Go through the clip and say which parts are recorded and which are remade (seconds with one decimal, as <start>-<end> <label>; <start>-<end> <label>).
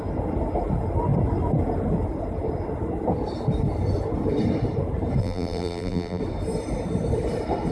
0.0-5.2 recorded; 5.2-6.2 remade; 6.2-7.7 recorded